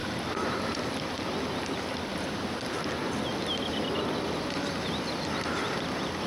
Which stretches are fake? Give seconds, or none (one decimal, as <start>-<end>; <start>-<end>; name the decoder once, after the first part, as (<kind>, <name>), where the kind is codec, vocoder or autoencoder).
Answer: 0.0-0.8 (vocoder, BigVGAN v2); 2.1-2.7